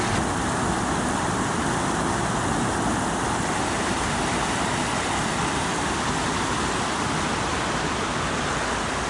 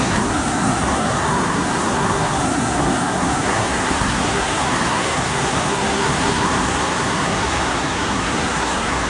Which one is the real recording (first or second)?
first